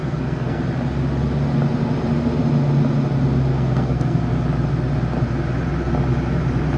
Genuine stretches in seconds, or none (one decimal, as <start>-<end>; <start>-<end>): 0.6-3.5; 4.2-6.8